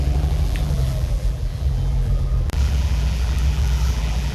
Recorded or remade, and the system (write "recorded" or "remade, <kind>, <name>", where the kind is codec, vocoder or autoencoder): remade, vocoder, BigVGAN v2